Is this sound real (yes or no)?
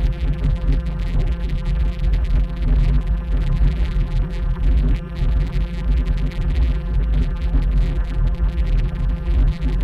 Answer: no